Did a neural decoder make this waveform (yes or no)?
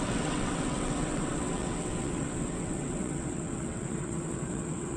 yes